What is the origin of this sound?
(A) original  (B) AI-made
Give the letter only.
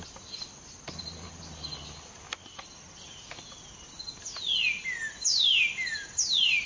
A